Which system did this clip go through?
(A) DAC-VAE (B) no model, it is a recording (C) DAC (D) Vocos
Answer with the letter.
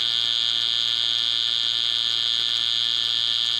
B